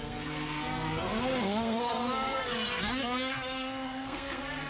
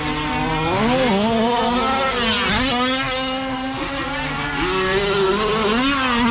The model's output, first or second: first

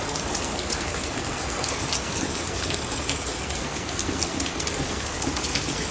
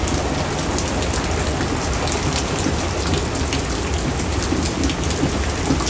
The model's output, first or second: first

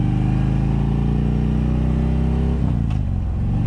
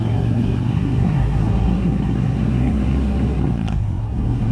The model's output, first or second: second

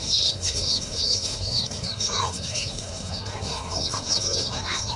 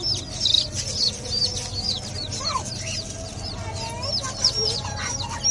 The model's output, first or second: first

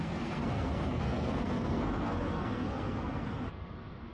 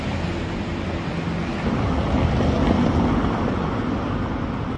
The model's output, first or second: first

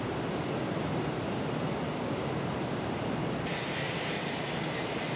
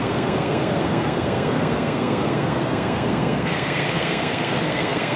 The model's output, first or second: second